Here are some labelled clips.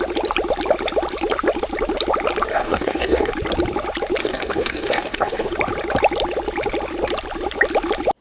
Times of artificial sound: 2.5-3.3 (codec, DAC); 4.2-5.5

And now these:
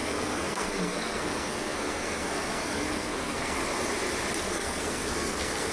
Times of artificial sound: 0.0-3.6 (codec, SNAC); 4.4-5.7

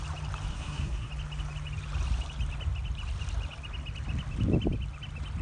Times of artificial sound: 0.5-1.1 (codec, SNAC)

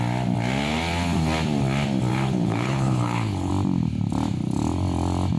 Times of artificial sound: 2.1-3.5 (codec, HILCodec)